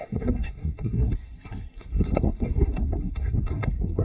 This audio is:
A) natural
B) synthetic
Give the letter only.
B